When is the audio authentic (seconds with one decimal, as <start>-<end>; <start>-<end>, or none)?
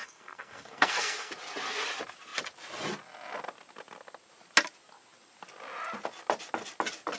1.3-7.2